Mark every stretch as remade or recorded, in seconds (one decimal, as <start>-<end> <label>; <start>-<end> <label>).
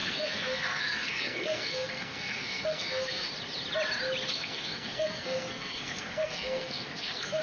0.0-3.3 remade; 3.3-4.3 recorded; 4.3-7.4 remade